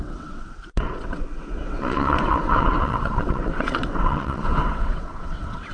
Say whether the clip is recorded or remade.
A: remade